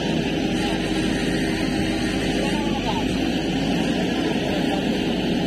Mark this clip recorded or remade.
recorded